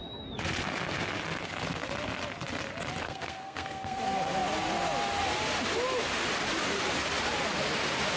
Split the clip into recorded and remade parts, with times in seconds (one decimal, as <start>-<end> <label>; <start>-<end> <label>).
0.0-3.0 recorded; 3.0-4.0 remade; 4.0-8.2 recorded

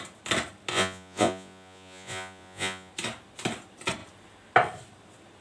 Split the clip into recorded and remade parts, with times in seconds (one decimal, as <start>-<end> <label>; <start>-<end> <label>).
0.0-0.7 recorded; 0.7-2.9 remade; 2.9-5.4 recorded